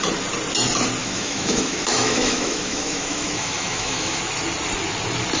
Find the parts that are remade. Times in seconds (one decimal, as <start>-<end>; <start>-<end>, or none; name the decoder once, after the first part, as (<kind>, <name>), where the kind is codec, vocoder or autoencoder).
1.0-4.2 (autoencoder, DAC-VAE)